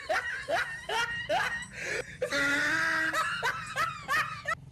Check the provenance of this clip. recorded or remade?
recorded